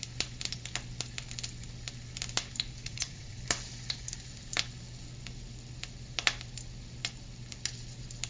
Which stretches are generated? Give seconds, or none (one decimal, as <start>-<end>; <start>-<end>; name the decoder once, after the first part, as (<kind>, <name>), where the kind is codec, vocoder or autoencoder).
2.8-3.4 (vocoder, Vocos)